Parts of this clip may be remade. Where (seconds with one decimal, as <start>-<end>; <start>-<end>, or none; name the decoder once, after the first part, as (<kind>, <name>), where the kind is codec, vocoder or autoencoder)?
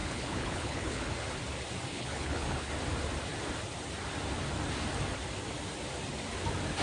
0.0-1.1 (codec, HILCodec); 1.9-2.7